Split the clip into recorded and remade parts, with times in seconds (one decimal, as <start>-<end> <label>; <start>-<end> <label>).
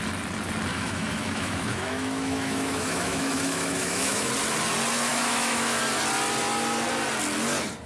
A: 0.0-0.7 recorded; 0.7-4.3 remade; 4.3-5.1 recorded; 5.1-5.8 remade; 5.8-7.9 recorded